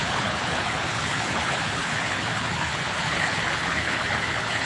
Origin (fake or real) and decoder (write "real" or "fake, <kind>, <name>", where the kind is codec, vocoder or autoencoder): fake, codec, HILCodec